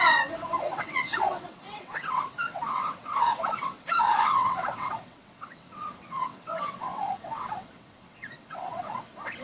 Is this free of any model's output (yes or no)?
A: no